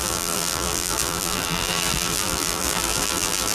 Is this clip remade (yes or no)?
yes